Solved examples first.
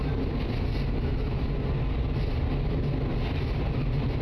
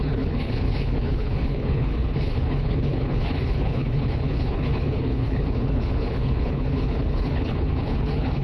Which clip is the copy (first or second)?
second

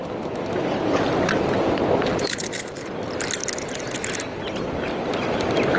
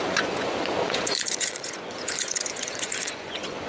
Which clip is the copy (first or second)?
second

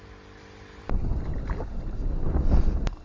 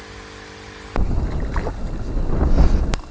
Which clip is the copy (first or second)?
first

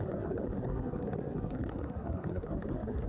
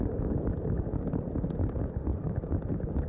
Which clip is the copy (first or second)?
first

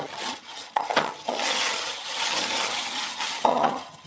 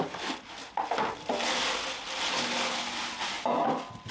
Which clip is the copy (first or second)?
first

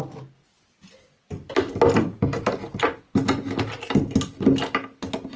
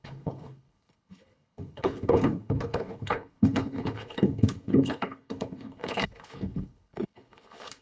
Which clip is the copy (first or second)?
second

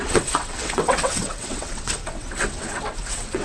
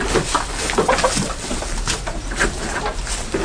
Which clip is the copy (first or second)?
first